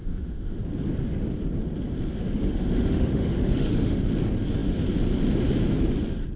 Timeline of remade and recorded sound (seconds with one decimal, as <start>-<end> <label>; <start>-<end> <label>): 0.0-0.6 remade; 0.6-2.1 recorded; 2.1-4.0 remade; 4.0-6.4 recorded